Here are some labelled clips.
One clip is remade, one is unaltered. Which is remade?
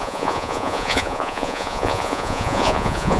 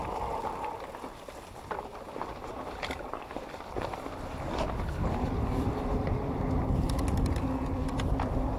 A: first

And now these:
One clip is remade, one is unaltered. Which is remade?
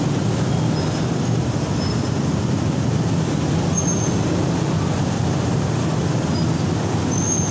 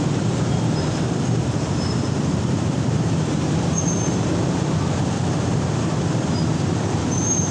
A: second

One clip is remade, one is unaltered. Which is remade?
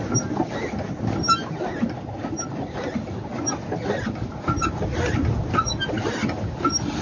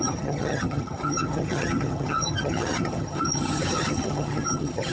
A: second